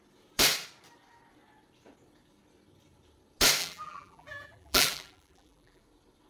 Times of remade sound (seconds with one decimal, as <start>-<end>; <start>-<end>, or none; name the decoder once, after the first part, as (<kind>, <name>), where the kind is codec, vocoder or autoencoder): 3.6-5.8 (vocoder, BigVGAN v2)